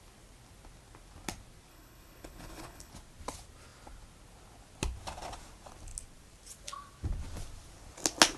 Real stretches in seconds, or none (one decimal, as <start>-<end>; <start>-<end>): 0.0-1.7; 2.9-8.4